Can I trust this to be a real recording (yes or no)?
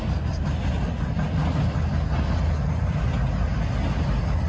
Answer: yes